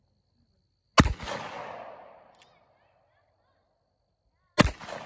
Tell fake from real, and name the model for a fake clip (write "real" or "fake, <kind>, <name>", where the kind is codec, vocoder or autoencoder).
real